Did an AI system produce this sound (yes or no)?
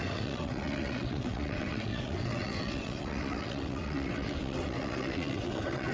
yes